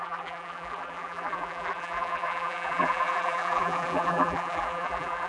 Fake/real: fake